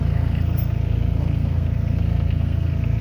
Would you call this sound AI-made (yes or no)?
yes